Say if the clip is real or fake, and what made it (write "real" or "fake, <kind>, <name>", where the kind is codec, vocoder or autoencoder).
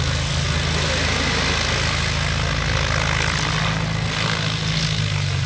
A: real